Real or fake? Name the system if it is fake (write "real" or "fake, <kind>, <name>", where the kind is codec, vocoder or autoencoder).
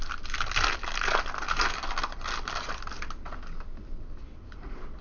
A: real